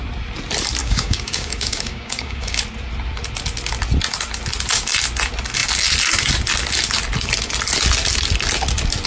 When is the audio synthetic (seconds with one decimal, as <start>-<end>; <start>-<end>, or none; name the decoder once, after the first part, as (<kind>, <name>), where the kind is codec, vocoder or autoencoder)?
0.8-2.6 (codec, DAC)